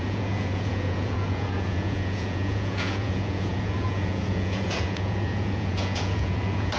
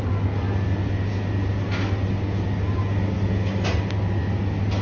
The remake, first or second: first